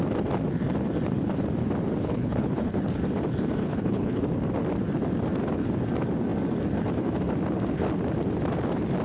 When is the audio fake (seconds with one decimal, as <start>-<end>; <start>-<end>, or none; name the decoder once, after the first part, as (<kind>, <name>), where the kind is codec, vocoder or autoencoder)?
2.0-2.8 (codec, HILCodec); 3.6-4.2